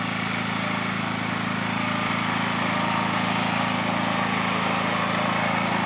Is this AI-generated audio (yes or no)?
no